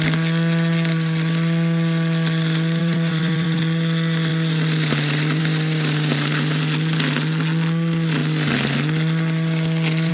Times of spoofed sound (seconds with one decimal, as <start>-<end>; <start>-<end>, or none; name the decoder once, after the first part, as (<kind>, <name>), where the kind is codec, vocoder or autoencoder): 2.8-3.6 (vocoder, Vocos)